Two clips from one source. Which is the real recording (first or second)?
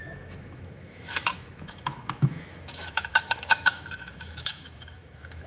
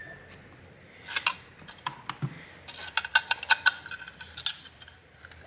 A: second